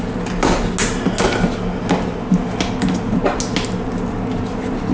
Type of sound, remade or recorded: recorded